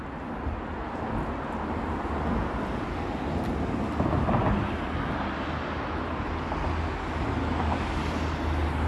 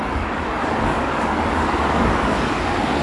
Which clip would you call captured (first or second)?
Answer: first